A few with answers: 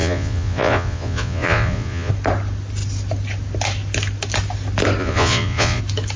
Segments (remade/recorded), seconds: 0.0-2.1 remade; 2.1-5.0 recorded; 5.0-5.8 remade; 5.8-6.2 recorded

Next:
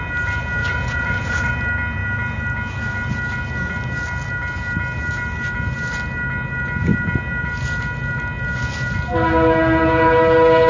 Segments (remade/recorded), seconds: 0.0-0.6 recorded; 0.6-1.5 remade; 1.5-10.7 recorded

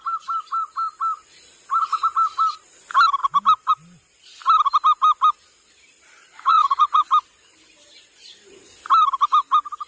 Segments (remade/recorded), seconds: 0.0-6.5 recorded; 6.5-7.1 remade; 7.1-9.9 recorded

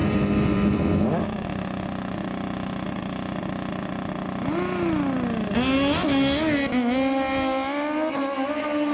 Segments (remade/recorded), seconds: 0.0-0.8 remade; 0.8-8.9 recorded

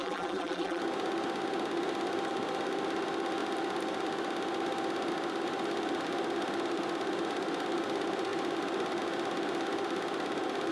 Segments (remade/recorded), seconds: 0.0-0.8 remade; 0.8-10.7 recorded

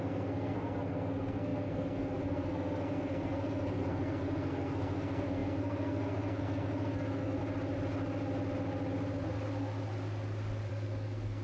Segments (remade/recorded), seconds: 0.0-7.4 remade; 7.4-10.7 recorded; 10.7-11.4 remade